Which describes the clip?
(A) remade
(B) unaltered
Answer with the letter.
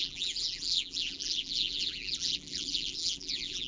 A